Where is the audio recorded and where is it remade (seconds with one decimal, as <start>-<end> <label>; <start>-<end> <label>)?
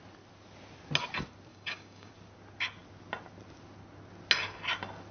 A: 0.0-1.5 recorded; 1.5-2.1 remade; 2.1-5.1 recorded